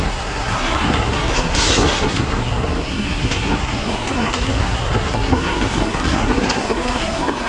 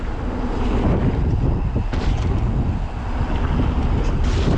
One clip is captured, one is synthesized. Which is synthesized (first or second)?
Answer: first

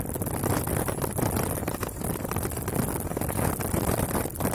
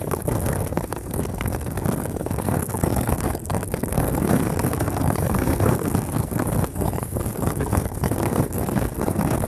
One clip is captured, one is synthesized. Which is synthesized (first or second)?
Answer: second